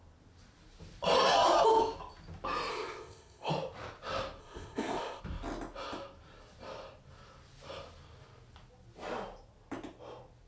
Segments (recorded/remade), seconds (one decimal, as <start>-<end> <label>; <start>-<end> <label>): 0.0-2.7 recorded; 2.7-3.5 remade; 3.5-4.4 recorded; 4.4-5.2 remade; 5.2-10.5 recorded